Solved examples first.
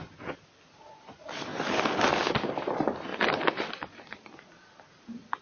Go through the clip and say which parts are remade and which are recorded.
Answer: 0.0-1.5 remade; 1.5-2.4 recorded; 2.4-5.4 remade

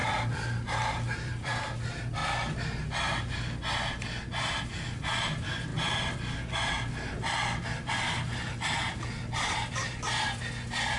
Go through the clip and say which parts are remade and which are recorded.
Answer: 0.0-1.6 remade; 1.6-11.0 recorded

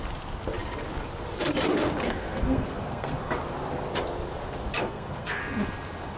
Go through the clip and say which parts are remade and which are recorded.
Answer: 0.0-2.0 recorded; 2.0-3.3 remade; 3.3-4.8 recorded; 4.8-5.4 remade; 5.4-6.2 recorded

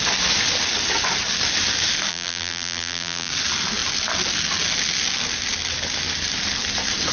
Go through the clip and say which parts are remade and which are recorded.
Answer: 0.0-2.1 recorded; 2.1-3.3 remade; 3.3-7.1 recorded